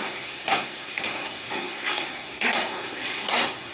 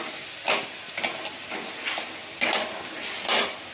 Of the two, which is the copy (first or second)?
first